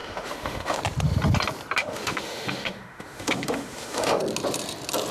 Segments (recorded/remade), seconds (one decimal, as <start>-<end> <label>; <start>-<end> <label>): 0.0-0.8 remade; 0.8-1.8 recorded; 1.8-4.2 remade; 4.2-5.1 recorded